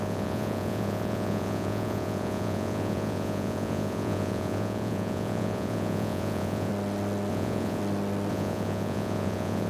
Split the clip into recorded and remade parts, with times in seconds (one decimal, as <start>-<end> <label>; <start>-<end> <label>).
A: 0.0-6.7 remade; 6.7-7.3 recorded; 7.3-7.8 remade; 7.8-8.3 recorded; 8.3-9.7 remade